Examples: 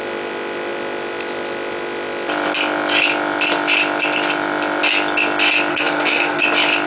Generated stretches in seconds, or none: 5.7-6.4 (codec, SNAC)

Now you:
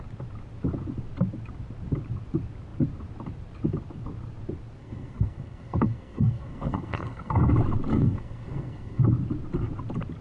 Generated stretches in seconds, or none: 4.8-7.5 (codec, SNAC); 7.9-9.0